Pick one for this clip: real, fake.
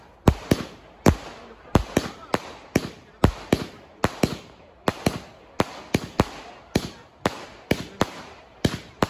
real